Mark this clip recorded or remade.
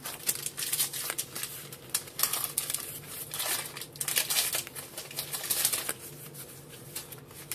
recorded